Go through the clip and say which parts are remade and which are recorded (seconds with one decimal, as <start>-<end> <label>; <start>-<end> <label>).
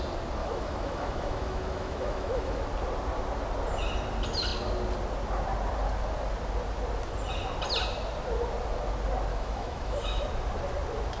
0.0-0.4 recorded; 0.4-2.6 remade; 2.6-9.3 recorded; 9.3-10.2 remade; 10.2-11.2 recorded